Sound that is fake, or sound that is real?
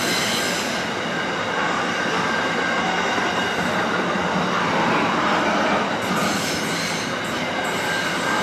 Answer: real